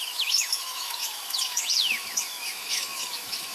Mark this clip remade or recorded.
remade